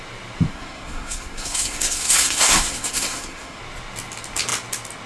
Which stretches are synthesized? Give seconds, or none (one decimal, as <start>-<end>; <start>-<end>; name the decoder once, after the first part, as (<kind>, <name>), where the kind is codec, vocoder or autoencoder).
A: 0.5-3.6 (codec, SNAC)